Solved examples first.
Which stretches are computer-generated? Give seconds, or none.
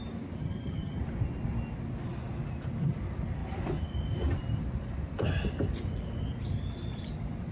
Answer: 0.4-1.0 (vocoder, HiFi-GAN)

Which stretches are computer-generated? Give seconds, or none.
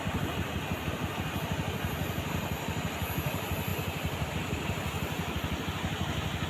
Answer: none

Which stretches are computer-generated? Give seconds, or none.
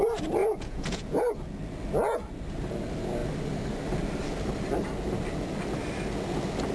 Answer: 0.4-1.2 (vocoder, Vocos)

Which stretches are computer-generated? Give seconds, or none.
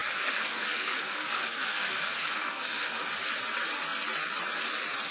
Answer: 0.0-3.0 (codec, SNAC)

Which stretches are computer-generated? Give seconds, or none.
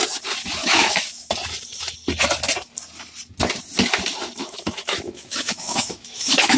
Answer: 0.6-1.3 (autoencoder, DAC-VAE); 4.4-6.6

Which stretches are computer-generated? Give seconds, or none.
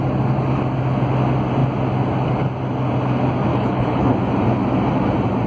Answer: 3.5-4.2 (codec, HILCodec)